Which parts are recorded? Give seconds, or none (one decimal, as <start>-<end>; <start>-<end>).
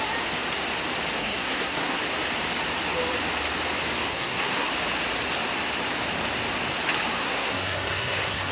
0.0-1.2; 2.0-4.1; 4.7-7.2